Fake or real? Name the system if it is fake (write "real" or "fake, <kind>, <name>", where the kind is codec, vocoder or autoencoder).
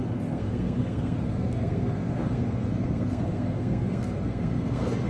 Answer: fake, codec, SNAC